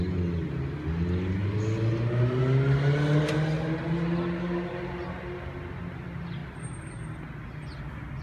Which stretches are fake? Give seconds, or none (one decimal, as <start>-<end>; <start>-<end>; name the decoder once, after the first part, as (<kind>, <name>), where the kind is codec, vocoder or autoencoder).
none